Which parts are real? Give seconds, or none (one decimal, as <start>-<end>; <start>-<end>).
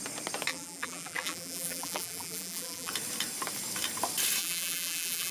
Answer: 0.0-0.5; 2.9-4.4